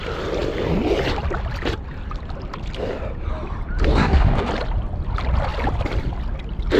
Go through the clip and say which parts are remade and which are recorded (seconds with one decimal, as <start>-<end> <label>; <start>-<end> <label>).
0.0-3.9 recorded; 3.9-4.5 remade; 4.5-6.8 recorded